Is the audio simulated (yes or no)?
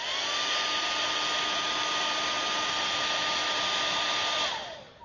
no